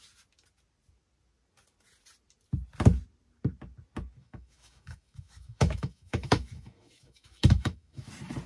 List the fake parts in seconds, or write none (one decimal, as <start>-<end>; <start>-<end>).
4.2-8.1